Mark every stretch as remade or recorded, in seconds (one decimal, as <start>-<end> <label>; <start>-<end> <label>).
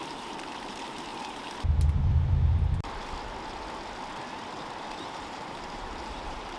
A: 0.0-1.1 remade; 1.1-5.1 recorded; 5.1-6.6 remade